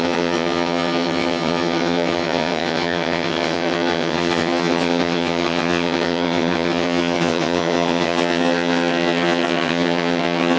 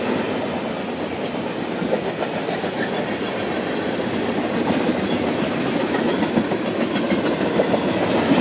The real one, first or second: second